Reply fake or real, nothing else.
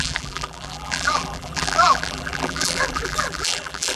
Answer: fake